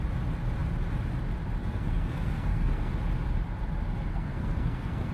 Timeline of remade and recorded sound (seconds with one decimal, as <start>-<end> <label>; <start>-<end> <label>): 0.0-1.6 recorded; 1.6-2.9 remade; 2.9-4.1 recorded; 4.1-5.1 remade